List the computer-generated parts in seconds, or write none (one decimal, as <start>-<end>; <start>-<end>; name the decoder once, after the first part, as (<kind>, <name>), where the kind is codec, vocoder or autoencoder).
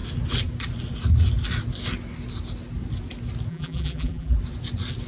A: 3.5-4.4 (vocoder, BigVGAN v2)